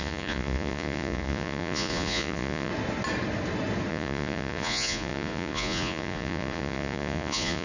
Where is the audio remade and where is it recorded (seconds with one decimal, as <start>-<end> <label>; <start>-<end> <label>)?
0.0-2.7 remade; 2.7-3.9 recorded; 3.9-7.6 remade